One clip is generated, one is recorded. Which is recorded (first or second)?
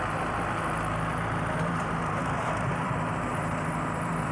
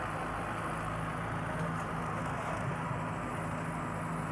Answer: second